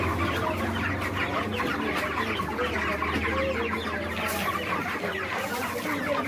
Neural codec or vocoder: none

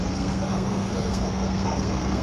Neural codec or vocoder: codec, SNAC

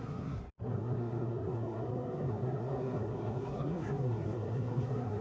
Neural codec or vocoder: codec, SNAC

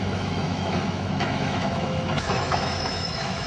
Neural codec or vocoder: autoencoder, DAC-VAE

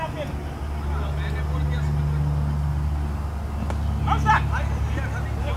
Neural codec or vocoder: none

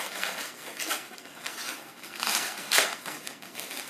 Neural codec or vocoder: codec, SNAC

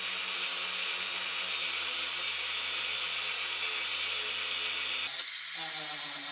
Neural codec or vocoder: none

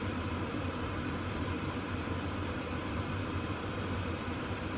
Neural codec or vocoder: vocoder, BigVGAN v2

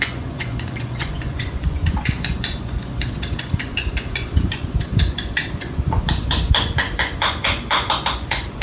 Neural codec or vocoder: vocoder, Vocos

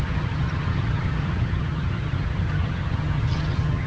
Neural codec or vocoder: vocoder, HiFi-GAN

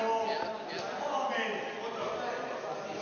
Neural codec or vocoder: none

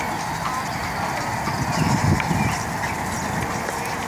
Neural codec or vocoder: none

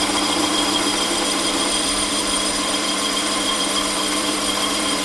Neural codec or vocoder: vocoder, BigVGAN v2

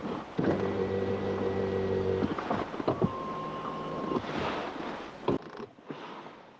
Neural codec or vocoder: none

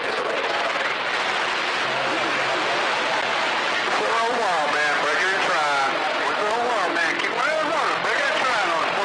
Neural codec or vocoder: none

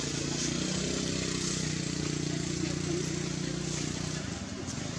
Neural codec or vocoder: none